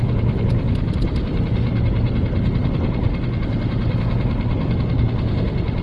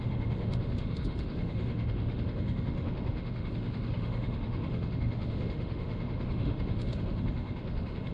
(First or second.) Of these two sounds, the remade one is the second